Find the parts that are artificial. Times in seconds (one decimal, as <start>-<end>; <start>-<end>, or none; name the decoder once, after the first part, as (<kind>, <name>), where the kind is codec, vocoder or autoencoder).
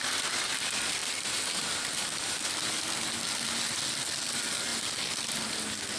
none